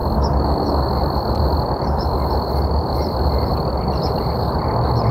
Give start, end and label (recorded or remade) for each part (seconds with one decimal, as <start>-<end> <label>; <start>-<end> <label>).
0.0-5.1 recorded

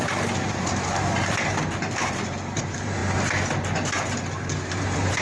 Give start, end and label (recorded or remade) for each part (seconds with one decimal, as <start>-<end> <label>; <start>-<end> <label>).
0.0-3.0 remade; 3.0-4.7 recorded; 4.7-5.2 remade

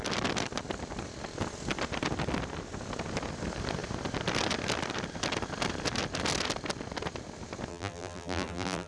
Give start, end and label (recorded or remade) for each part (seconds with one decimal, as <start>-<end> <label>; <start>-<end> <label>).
0.0-7.7 recorded; 7.7-8.9 remade

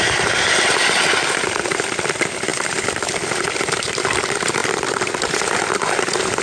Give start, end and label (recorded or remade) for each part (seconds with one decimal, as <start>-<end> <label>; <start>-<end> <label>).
0.0-6.4 recorded

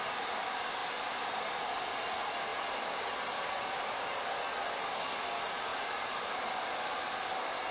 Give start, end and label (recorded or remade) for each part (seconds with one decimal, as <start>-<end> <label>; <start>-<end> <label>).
0.0-0.8 recorded; 0.8-1.8 remade; 1.8-5.7 recorded; 5.7-6.4 remade; 6.4-7.7 recorded